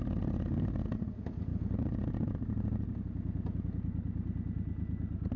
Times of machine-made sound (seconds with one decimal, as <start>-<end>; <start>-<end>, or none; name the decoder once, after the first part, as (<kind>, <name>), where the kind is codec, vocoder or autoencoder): none